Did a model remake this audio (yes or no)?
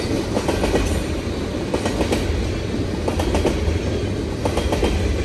no